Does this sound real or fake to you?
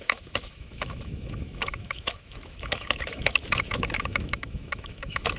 fake